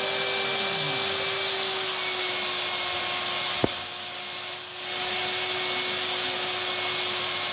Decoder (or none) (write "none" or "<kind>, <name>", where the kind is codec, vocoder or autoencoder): none